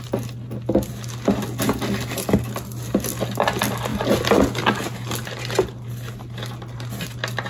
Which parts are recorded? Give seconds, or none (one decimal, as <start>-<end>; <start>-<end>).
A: 0.0-7.5